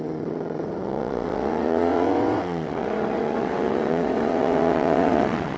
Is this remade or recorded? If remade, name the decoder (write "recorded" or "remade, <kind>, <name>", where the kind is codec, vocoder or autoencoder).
remade, vocoder, WaveNeXt